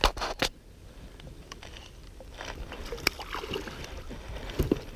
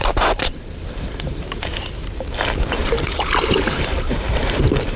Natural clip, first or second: first